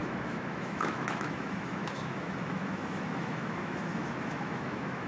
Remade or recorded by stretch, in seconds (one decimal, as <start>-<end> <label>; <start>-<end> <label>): 0.0-5.1 remade